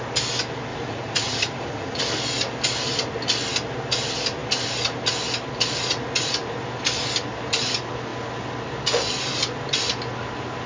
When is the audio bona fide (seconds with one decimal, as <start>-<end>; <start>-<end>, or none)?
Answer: 0.0-0.7; 2.0-10.7